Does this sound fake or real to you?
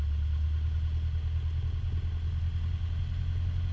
real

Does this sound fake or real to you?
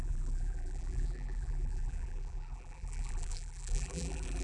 fake